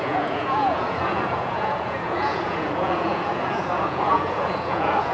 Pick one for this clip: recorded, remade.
remade